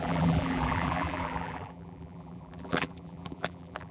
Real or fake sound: fake